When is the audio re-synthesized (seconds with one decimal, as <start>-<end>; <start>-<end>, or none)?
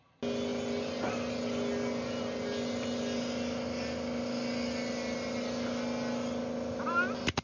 none